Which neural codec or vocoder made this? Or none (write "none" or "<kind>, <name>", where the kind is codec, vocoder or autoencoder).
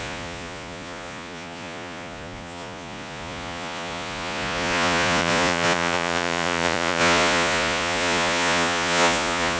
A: vocoder, Vocos